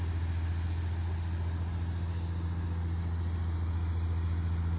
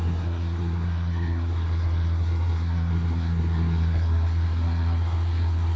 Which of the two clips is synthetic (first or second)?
second